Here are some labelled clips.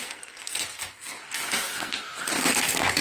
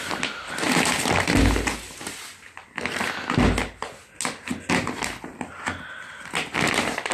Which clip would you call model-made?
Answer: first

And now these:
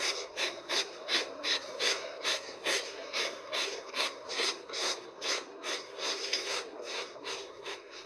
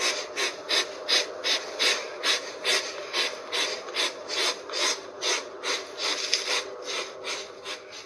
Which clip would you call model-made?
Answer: first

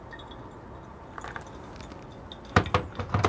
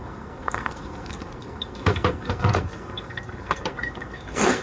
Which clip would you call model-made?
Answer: second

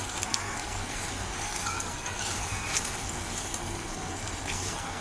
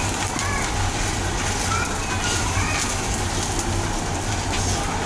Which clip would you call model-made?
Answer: first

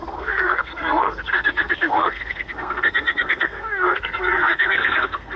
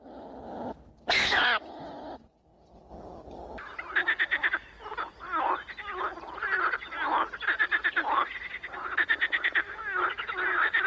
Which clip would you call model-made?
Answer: first